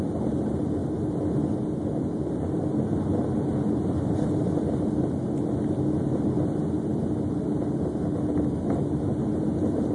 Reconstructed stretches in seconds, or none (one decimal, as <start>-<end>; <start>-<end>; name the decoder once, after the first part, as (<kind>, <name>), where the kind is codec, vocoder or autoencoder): none